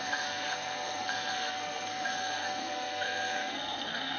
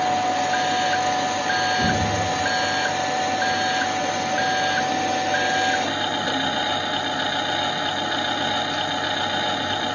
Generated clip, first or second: first